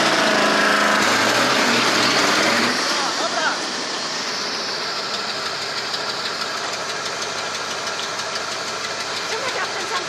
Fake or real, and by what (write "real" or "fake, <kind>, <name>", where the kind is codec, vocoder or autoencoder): real